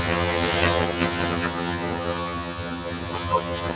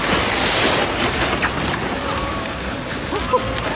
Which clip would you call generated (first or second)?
first